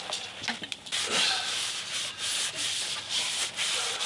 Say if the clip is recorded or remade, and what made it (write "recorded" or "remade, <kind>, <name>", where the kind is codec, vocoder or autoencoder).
recorded